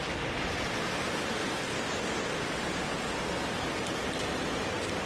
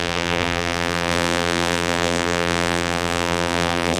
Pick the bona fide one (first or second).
first